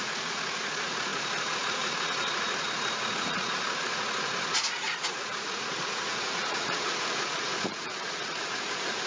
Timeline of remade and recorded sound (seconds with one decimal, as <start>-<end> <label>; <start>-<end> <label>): 0.0-9.1 remade